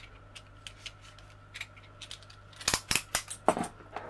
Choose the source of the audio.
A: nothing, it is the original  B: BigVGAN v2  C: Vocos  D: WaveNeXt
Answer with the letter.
A